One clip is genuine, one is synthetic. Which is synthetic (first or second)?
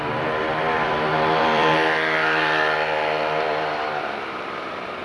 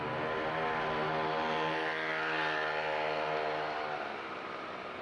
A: first